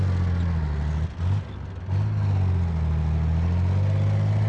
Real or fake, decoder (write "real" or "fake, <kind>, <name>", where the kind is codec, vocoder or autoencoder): real